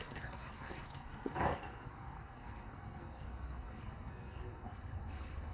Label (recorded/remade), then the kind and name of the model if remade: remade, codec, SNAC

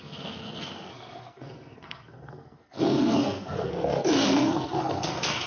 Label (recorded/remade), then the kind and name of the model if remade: remade, codec, SNAC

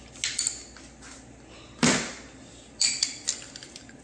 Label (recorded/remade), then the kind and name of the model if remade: recorded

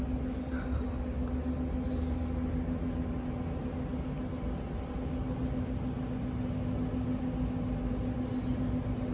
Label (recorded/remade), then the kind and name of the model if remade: recorded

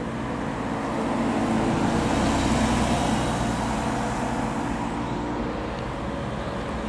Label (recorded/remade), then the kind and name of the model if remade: recorded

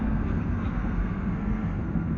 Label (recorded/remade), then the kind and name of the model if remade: remade, codec, SNAC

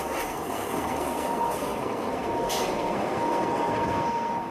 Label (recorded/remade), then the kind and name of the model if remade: remade, codec, SNAC